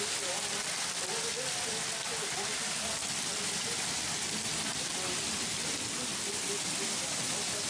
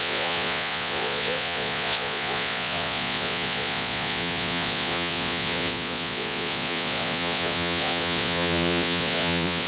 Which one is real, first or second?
first